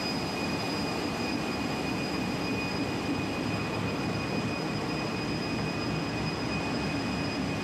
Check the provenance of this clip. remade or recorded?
recorded